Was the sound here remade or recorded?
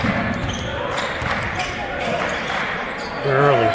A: recorded